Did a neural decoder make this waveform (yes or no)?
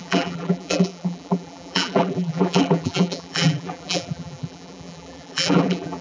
yes